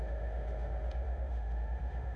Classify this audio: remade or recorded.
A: remade